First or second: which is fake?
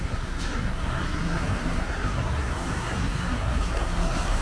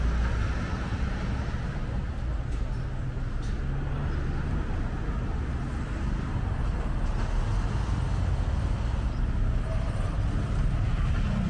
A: first